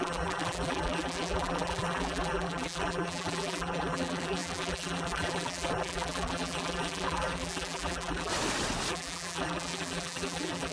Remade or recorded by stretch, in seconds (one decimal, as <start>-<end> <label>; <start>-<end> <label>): 0.0-8.3 remade; 8.3-8.9 recorded; 8.9-10.7 remade